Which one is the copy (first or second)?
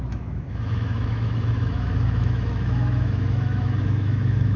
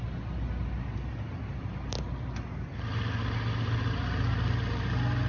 first